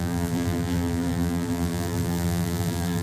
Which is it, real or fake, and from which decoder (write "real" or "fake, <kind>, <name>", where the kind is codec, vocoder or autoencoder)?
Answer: fake, vocoder, BigVGAN v2